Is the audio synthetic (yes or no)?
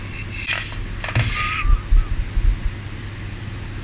no